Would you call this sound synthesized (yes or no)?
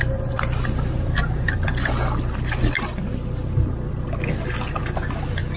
no